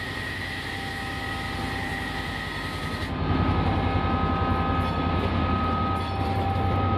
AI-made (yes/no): no